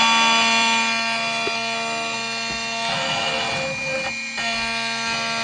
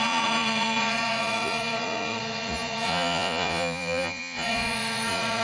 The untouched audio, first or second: first